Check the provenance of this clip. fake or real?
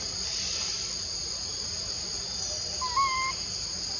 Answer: real